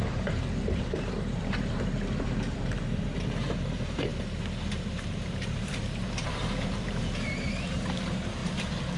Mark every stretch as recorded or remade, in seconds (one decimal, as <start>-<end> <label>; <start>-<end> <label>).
0.0-4.1 remade; 4.1-5.1 recorded; 5.1-9.0 remade